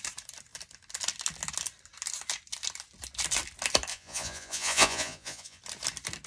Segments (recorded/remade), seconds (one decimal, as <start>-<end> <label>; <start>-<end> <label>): 0.0-3.9 recorded; 3.9-5.6 remade; 5.6-6.3 recorded